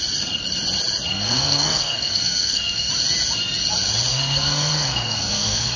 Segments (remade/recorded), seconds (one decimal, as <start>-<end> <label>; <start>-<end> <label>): 0.0-1.1 recorded; 1.1-2.9 remade; 2.9-4.1 recorded; 4.1-5.8 remade